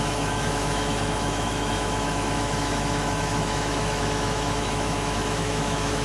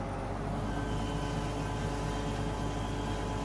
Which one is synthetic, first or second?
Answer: first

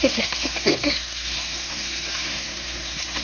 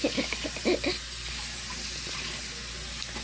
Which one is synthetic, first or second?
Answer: first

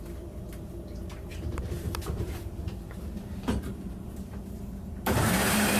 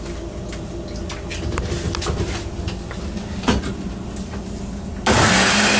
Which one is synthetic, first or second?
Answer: first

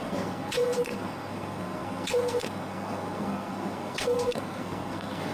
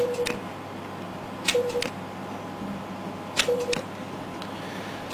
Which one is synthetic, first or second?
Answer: first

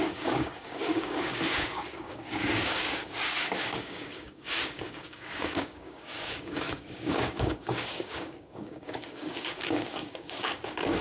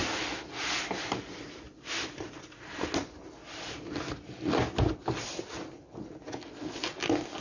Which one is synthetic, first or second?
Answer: first